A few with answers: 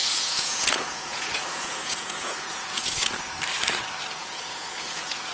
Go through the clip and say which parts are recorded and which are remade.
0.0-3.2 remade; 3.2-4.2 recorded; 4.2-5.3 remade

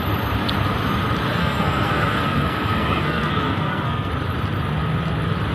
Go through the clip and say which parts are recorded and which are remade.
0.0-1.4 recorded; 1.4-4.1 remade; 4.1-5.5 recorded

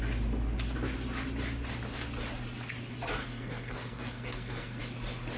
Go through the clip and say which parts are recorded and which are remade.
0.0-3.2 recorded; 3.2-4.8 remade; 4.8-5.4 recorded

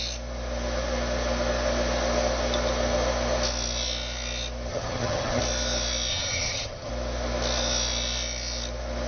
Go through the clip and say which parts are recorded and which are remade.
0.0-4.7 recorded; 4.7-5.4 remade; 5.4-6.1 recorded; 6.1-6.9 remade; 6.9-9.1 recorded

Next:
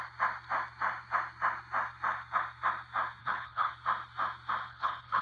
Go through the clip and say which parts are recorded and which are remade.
0.0-3.2 recorded; 3.2-3.7 remade; 3.7-4.7 recorded; 4.7-5.2 remade